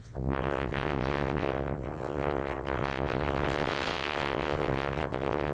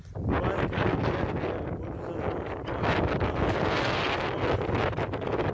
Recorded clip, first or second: second